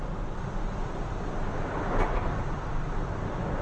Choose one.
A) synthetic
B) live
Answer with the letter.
B